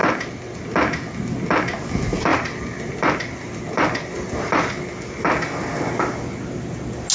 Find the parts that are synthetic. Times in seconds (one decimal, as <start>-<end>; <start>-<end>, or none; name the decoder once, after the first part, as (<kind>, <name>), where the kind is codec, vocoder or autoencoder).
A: 0.0-0.6 (vocoder, BigVGAN v2); 2.3-4.7